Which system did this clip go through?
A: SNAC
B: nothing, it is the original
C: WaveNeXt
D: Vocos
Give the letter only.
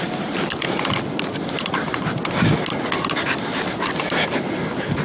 B